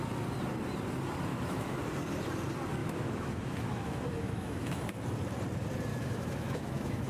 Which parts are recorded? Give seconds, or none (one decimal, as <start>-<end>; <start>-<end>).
0.0-1.3; 1.9-2.8; 4.8-5.9